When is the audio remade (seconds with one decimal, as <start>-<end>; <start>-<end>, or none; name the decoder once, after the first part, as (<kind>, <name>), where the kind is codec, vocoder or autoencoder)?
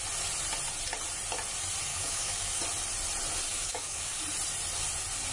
1.9-2.6 (codec, DAC); 3.5-4.2